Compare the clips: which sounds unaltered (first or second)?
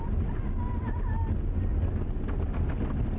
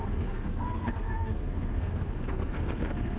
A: first